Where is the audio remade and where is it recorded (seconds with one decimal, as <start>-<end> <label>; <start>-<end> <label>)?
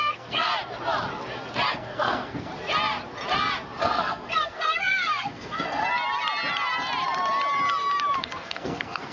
0.0-0.5 remade; 0.5-1.7 recorded; 1.7-2.5 remade; 2.5-3.8 recorded; 3.8-5.8 remade; 5.8-8.2 recorded; 8.2-9.1 remade